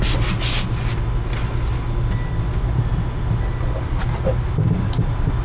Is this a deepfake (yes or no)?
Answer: no